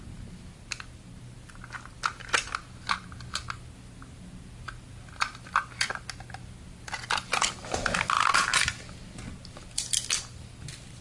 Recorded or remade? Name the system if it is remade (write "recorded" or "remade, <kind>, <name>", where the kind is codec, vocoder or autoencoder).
recorded